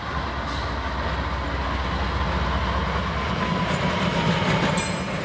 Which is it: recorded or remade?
recorded